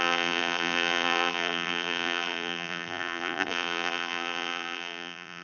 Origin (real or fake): fake